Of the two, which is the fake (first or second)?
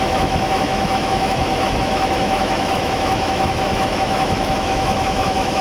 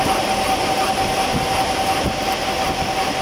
first